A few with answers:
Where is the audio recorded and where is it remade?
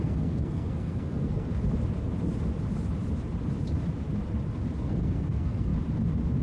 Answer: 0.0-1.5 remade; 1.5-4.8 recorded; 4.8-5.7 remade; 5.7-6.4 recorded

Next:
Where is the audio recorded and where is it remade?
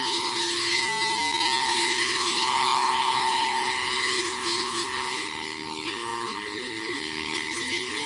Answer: 0.0-0.8 remade; 0.8-1.6 recorded; 1.6-8.1 remade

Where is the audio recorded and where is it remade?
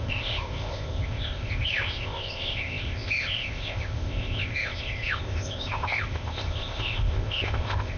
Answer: 0.0-8.0 remade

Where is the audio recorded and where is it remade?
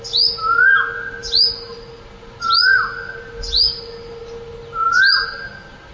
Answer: 0.0-5.9 recorded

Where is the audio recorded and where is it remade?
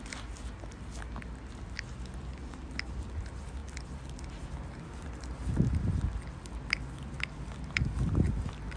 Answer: 0.0-8.8 recorded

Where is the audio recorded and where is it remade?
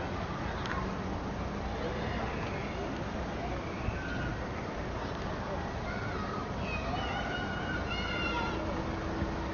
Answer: 0.0-9.5 recorded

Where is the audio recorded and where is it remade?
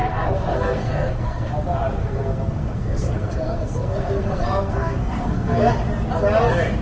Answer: 0.0-1.5 remade; 1.5-2.0 recorded; 2.0-5.7 remade; 5.7-6.8 recorded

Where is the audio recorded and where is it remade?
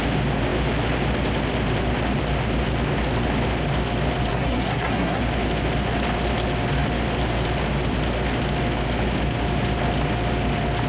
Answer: 0.0-4.3 recorded; 4.3-5.2 remade; 5.2-10.9 recorded